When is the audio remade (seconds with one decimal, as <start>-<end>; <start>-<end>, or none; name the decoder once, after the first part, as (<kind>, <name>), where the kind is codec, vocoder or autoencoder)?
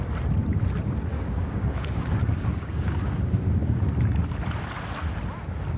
1.1-3.8 (codec, DAC)